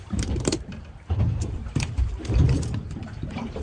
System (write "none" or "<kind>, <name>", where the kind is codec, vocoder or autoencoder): vocoder, BigVGAN v2